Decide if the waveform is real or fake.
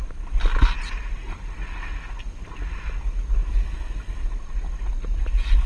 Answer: real